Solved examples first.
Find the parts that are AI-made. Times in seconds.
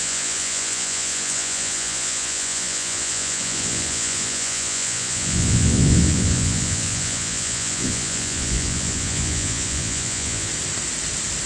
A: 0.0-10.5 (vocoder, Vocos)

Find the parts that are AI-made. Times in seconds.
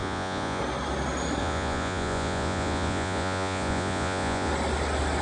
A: 0.0-0.6 (vocoder, Vocos); 1.4-4.5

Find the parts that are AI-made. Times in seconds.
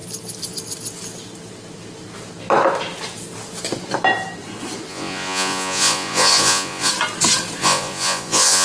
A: 4.9-6.9 (vocoder, Vocos); 7.6-8.6